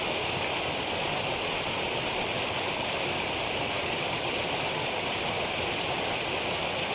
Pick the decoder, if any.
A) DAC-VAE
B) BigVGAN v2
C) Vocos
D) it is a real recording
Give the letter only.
D